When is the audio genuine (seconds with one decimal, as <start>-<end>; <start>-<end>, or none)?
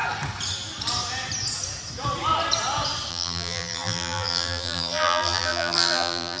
0.0-3.1